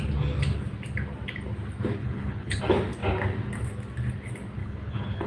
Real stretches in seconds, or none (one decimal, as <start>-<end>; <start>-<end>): 0.0-2.0; 2.6-4.6